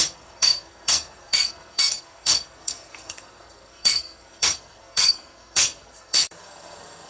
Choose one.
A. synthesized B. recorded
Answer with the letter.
A